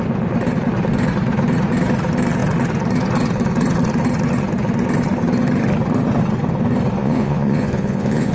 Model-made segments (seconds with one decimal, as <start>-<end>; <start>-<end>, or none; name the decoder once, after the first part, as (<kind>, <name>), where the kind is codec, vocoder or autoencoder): 7.0-8.3 (vocoder, Vocos)